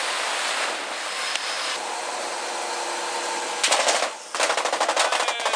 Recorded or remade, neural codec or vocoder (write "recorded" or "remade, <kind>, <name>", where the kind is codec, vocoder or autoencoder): recorded